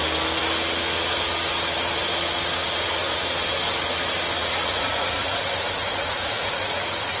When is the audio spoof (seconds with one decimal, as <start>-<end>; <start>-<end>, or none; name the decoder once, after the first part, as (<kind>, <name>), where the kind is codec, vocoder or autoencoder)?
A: 4.4-7.2 (vocoder, Vocos)